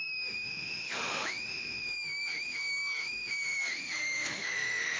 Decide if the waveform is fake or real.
fake